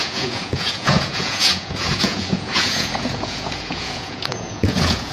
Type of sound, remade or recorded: remade